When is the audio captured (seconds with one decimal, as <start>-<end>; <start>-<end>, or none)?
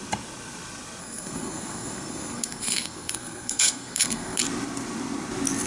0.0-1.0; 4.4-5.7